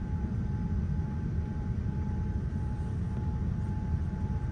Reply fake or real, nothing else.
fake